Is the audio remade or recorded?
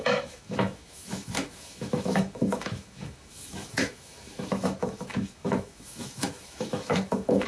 remade